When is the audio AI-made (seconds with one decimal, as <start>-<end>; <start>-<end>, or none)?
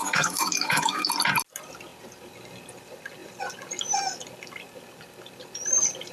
0.0-1.1